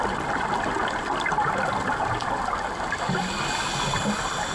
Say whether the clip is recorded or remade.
recorded